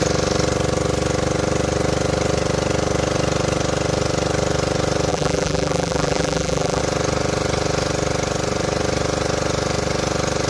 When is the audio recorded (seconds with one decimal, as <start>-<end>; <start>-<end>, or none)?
0.0-5.1; 6.8-10.5